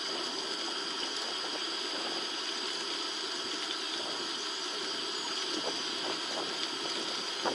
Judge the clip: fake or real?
real